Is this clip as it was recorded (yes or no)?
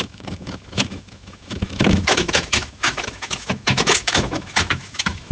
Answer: no